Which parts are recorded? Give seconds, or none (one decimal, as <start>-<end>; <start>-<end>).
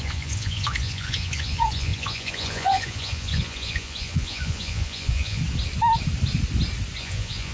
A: 5.4-7.0